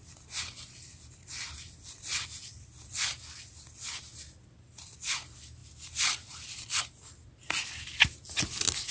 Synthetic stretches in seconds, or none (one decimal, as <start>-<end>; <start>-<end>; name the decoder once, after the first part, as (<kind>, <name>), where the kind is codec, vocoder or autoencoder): none